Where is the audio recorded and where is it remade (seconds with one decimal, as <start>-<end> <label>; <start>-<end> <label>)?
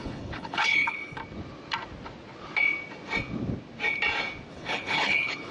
0.0-1.2 remade; 1.2-4.5 recorded; 4.5-5.5 remade